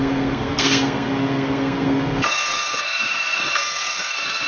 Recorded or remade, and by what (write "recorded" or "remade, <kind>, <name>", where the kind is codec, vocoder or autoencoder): remade, codec, SNAC